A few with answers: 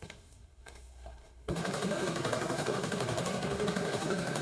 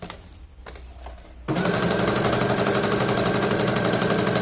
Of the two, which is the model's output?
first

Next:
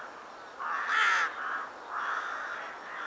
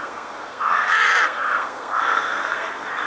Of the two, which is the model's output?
second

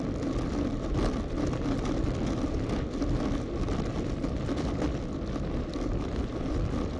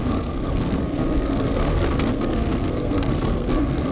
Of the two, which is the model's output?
second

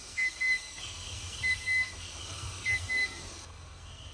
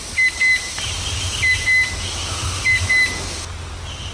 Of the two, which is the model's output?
first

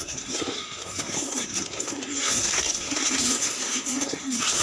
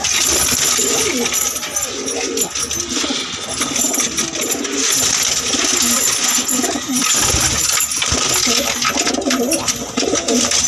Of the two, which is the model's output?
first